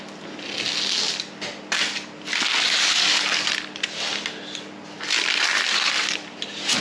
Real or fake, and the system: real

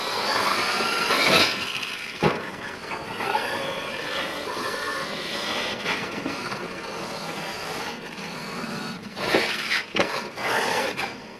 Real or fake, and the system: fake, codec, SNAC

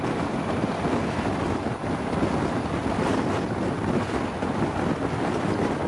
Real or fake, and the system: real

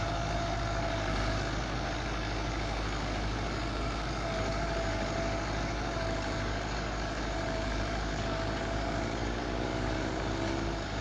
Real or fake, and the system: fake, codec, DAC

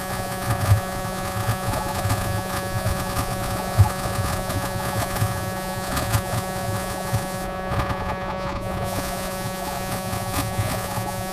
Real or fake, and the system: fake, vocoder, Vocos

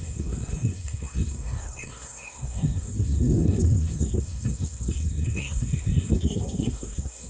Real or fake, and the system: fake, codec, SNAC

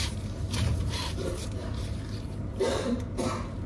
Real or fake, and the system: fake, vocoder, BigVGAN v2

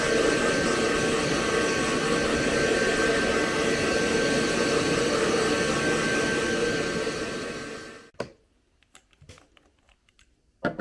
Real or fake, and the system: real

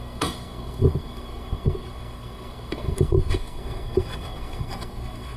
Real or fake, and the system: fake, codec, SNAC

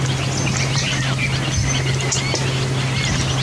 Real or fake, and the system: real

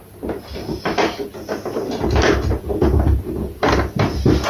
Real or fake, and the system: real